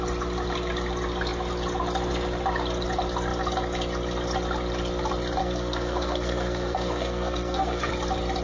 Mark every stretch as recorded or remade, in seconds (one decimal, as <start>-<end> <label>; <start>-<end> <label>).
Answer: 0.0-5.4 recorded; 5.4-7.9 remade; 7.9-8.4 recorded